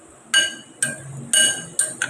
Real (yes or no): yes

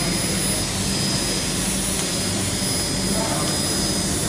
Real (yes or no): yes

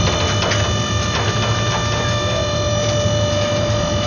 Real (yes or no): yes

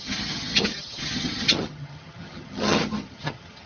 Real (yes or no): no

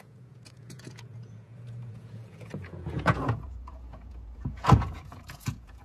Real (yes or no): no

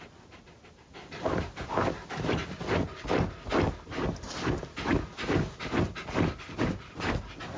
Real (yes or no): yes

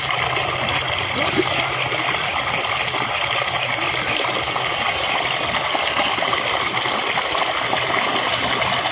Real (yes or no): yes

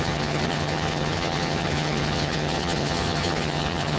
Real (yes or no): no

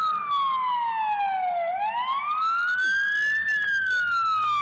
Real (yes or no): yes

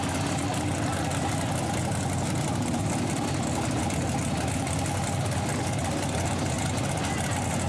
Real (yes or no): yes